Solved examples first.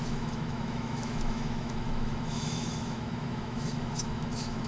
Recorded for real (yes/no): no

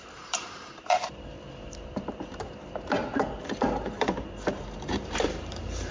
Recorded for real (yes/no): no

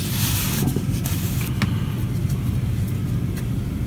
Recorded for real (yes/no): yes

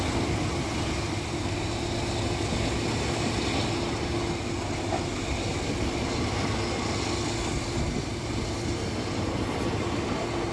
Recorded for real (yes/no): yes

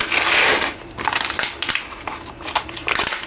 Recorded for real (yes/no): yes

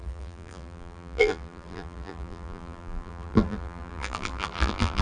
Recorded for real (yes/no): no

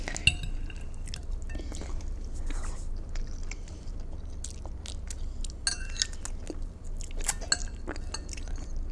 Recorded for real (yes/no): yes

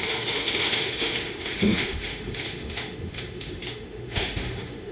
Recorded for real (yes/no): no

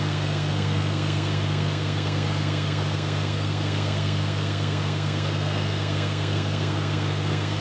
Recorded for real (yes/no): no